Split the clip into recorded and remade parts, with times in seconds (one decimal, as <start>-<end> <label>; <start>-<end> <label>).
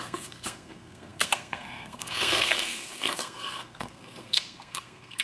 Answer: 0.0-5.2 remade